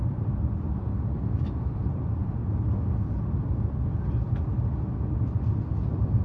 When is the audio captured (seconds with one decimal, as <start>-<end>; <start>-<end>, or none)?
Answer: 0.4-1.5; 2.2-6.2